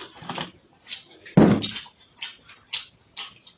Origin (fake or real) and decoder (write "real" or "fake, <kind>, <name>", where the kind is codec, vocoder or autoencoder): real